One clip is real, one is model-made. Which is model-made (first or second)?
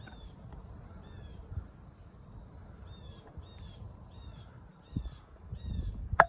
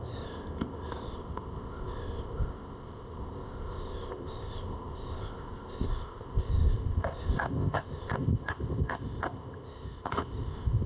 second